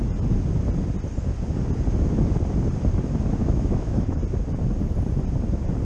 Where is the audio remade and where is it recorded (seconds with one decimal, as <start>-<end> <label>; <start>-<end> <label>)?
0.0-3.4 recorded; 3.4-4.2 remade; 4.2-5.8 recorded